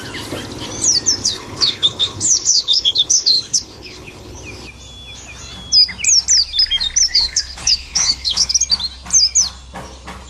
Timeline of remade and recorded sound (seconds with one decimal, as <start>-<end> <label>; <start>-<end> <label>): 0.0-1.2 recorded; 1.2-4.4 remade; 4.4-7.1 recorded; 7.1-8.5 remade; 8.5-10.3 recorded